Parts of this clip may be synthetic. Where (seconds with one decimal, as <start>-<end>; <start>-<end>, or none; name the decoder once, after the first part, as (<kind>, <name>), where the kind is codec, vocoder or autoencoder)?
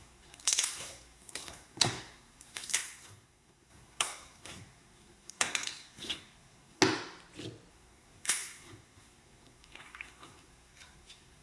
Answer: 0.0-6.8 (codec, SNAC); 7.7-11.4